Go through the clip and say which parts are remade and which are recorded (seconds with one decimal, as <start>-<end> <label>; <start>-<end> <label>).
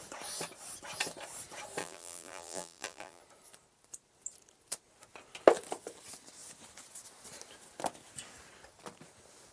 0.0-1.8 recorded; 1.8-3.2 remade; 3.2-9.5 recorded